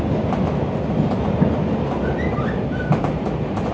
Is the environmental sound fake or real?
real